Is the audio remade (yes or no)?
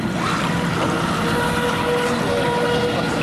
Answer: no